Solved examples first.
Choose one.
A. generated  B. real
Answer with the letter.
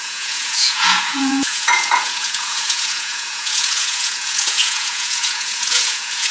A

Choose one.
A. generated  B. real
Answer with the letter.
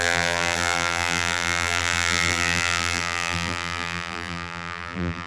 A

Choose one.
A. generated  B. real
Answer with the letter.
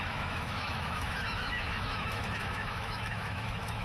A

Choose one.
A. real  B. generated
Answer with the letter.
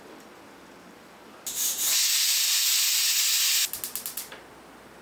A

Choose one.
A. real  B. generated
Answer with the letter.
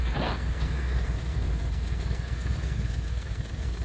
B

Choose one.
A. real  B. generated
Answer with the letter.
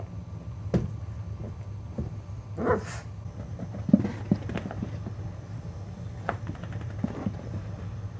A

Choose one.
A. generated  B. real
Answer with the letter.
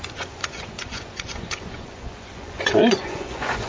A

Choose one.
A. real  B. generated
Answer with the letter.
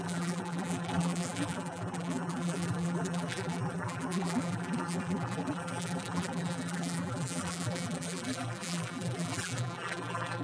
B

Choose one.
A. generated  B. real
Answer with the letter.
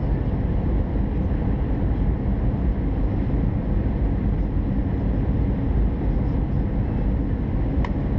B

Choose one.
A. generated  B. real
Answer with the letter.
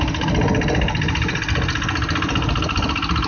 B